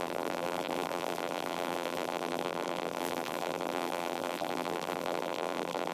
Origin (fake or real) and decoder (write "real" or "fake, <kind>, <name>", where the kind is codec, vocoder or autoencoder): fake, vocoder, BigVGAN v2